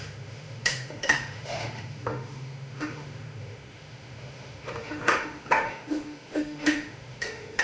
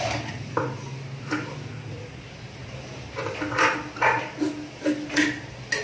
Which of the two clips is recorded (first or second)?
second